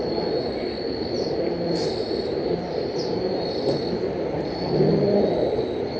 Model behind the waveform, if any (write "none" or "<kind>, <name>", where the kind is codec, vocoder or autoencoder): vocoder, BigVGAN v2